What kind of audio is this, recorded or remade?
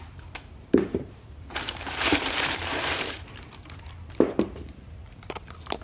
remade